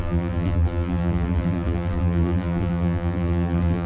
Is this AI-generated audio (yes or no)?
yes